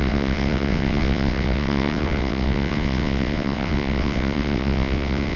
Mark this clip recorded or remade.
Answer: remade